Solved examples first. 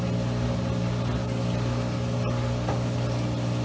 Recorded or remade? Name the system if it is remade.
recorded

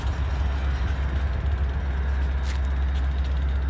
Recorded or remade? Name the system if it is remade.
recorded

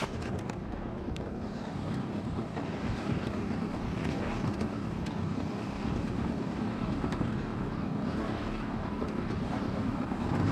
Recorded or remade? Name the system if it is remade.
remade, codec, DAC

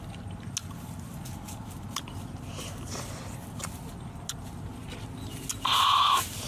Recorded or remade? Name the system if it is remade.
recorded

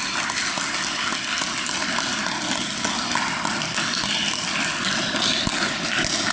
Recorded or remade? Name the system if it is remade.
recorded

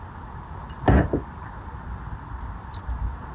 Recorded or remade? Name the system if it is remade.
recorded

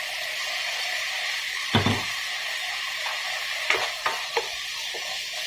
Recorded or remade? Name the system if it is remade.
recorded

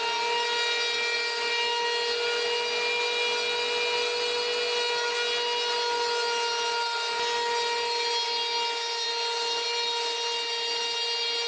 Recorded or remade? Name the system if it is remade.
recorded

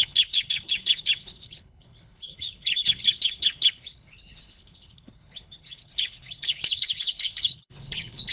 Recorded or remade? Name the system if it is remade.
remade, codec, HILCodec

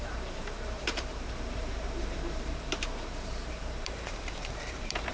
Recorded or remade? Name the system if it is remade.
remade, vocoder, BigVGAN v2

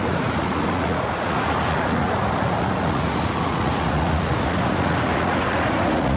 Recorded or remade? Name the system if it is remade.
remade, vocoder, Vocos